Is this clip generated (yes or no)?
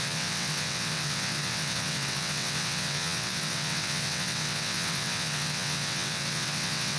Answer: yes